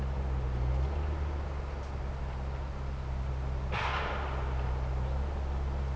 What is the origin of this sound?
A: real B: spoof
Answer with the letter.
A